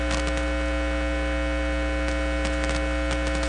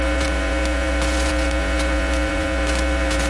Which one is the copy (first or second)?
second